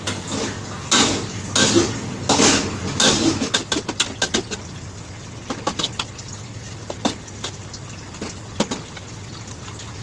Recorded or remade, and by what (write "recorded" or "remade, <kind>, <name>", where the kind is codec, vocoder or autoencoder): recorded